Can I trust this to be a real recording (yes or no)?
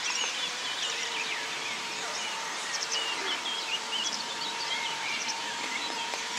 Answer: no